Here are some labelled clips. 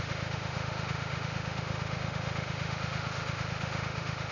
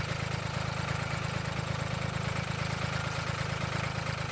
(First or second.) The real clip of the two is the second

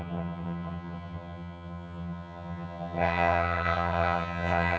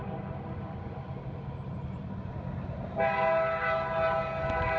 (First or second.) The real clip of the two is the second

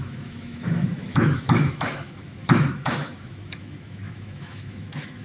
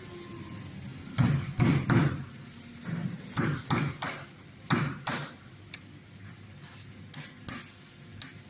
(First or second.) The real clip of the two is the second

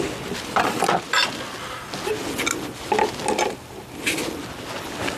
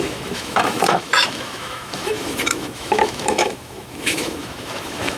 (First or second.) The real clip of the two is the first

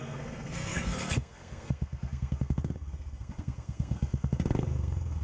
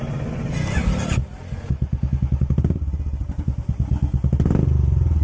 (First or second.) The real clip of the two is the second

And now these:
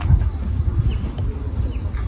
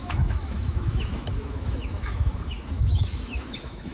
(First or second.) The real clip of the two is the first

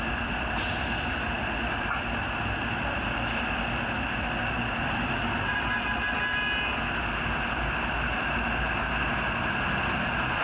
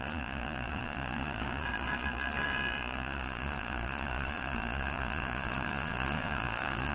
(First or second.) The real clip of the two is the first